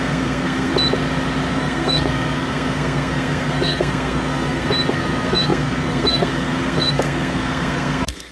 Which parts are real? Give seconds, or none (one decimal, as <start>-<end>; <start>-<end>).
0.7-1.5